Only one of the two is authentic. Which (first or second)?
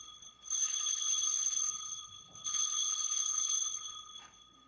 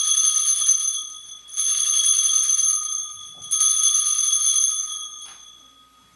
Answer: second